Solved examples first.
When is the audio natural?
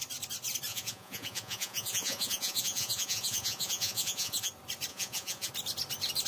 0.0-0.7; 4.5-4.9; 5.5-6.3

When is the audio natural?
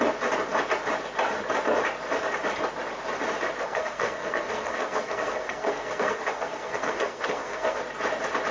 0.0-3.6; 7.8-8.5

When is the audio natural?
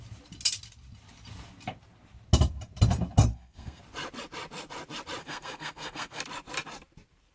0.0-3.3; 3.8-5.2; 6.2-7.3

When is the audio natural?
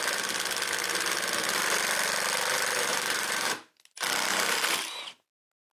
0.0-2.9; 3.8-4.3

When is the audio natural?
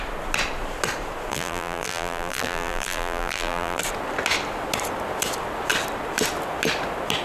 0.0-1.3; 3.8-7.2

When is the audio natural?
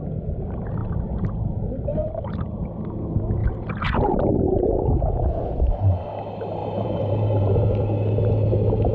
0.0-0.8; 3.0-3.4; 4.8-6.6; 7.6-8.9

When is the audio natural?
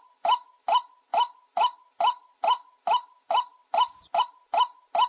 0.0-1.1; 4.2-5.1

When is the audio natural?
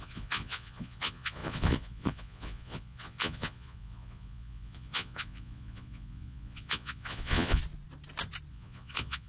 7.6-8.5